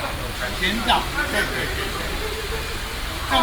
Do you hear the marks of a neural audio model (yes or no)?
no